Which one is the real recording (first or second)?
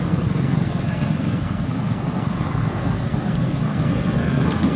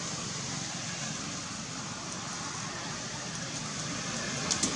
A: second